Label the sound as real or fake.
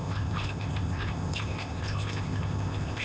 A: fake